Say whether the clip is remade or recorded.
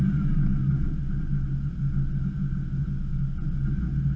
recorded